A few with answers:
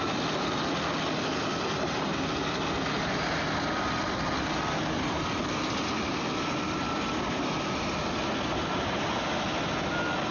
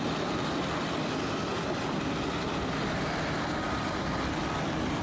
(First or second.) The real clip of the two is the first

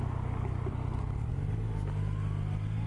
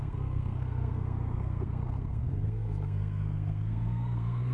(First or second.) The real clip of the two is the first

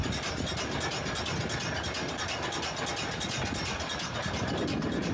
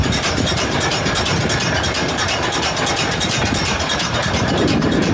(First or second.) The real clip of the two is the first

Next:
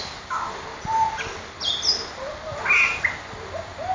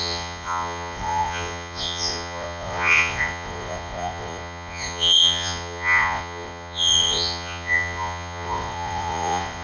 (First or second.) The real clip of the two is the first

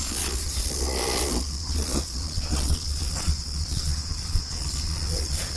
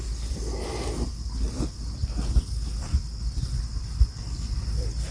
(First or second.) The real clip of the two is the second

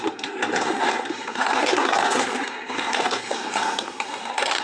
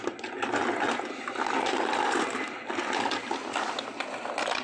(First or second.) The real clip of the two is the second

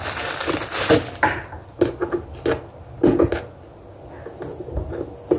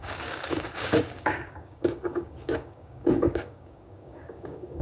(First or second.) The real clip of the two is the first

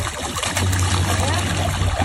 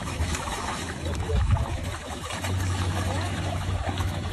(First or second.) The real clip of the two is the first